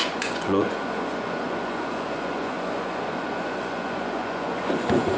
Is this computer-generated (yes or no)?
yes